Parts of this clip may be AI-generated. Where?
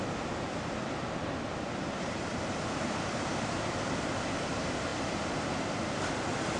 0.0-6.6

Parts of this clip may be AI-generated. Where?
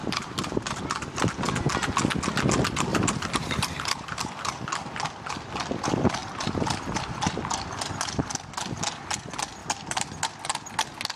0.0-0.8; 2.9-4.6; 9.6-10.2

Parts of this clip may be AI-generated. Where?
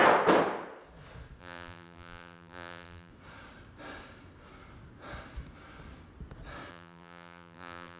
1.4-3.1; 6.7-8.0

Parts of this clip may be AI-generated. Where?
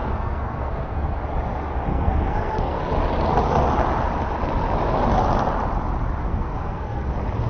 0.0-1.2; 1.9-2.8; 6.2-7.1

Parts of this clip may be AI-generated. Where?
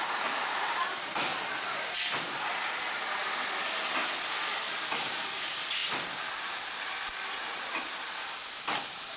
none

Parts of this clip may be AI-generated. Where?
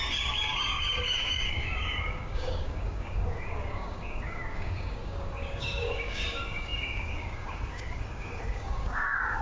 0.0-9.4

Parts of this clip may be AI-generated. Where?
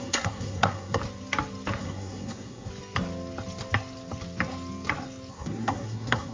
0.0-1.0; 1.8-2.7; 5.3-6.3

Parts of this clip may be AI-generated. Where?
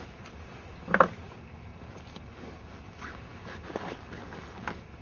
none